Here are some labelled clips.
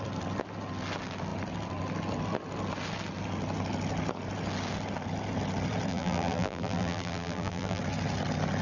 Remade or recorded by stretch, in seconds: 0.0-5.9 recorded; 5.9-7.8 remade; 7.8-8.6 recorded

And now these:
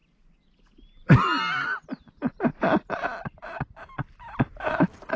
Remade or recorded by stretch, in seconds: 0.0-5.2 recorded

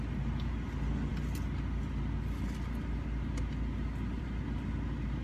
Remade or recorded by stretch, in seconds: 0.0-5.2 recorded

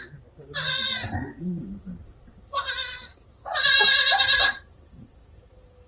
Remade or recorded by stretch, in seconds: 0.0-2.8 recorded; 2.8-3.4 remade; 3.4-4.1 recorded; 4.1-5.1 remade; 5.1-5.9 recorded

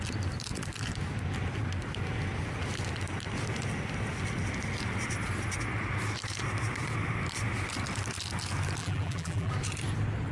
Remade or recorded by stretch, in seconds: 0.0-8.8 recorded; 8.8-9.5 remade; 9.5-10.3 recorded

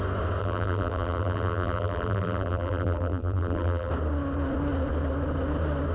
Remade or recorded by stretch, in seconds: 0.0-0.4 recorded; 0.4-3.9 remade; 3.9-5.9 recorded

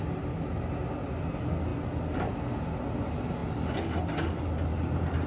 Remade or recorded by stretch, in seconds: 0.0-5.3 recorded

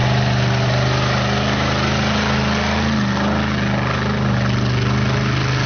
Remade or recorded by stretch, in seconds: 0.0-5.7 recorded